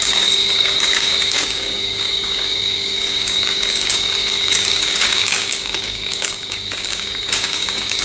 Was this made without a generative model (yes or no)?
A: no